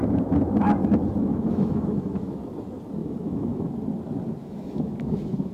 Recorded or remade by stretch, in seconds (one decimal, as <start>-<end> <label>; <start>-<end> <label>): 0.0-1.2 recorded; 1.2-2.4 remade; 2.4-3.0 recorded; 3.0-3.7 remade; 3.7-4.4 recorded; 4.4-5.5 remade